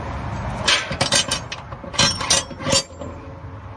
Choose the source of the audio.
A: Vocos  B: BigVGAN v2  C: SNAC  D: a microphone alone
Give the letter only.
D